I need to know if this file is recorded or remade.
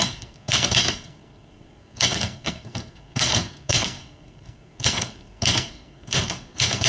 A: remade